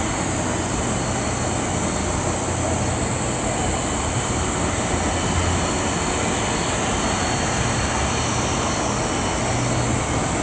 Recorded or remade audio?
recorded